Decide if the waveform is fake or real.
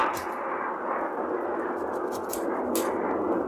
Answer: real